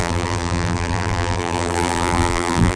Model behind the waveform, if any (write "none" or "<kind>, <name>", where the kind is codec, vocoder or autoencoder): vocoder, BigVGAN v2